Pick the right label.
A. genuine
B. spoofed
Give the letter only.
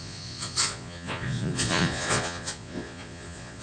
B